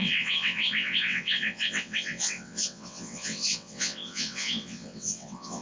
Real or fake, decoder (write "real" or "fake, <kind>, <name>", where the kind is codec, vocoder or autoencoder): fake, vocoder, WaveNeXt